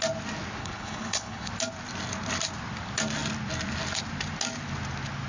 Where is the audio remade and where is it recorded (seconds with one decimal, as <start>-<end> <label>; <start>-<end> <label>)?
0.0-0.6 recorded; 0.6-1.5 remade; 1.5-5.3 recorded